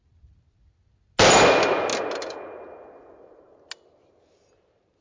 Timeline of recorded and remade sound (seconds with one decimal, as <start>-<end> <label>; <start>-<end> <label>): 0.0-5.0 recorded